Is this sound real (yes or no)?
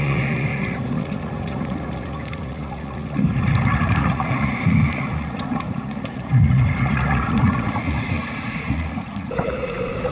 no